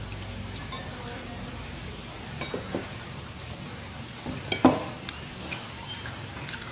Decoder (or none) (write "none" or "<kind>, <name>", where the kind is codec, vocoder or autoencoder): none